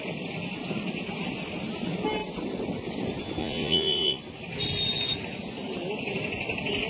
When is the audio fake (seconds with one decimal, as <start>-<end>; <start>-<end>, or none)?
3.4-4.2